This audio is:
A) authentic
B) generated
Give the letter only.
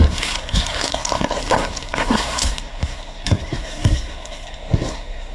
B